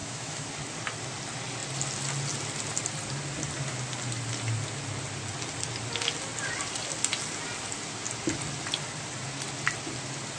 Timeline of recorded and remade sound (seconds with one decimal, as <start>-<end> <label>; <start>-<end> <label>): 0.0-0.5 remade; 0.5-10.4 recorded

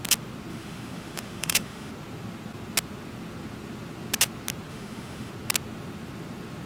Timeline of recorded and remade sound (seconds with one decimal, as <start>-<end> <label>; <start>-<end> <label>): 0.0-0.5 recorded; 0.5-1.9 remade; 1.9-4.7 recorded; 4.7-5.3 remade; 5.3-6.7 recorded

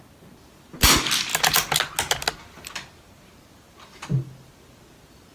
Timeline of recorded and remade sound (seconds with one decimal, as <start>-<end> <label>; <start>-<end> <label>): 0.0-5.3 recorded

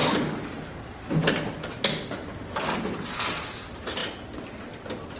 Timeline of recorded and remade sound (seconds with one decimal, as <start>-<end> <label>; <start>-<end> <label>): 0.0-5.2 recorded